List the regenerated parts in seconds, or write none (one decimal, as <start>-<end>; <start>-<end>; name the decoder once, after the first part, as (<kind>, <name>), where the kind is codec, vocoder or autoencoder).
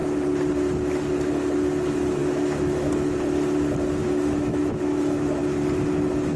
2.2-2.9 (autoencoder, DAC-VAE); 4.0-5.4